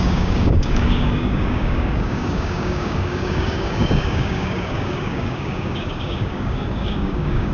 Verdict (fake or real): fake